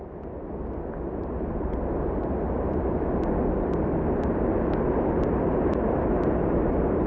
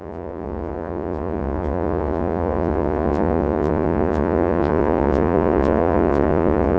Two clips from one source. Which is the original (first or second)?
first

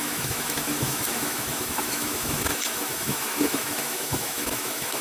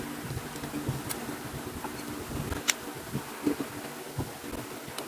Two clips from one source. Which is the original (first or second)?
second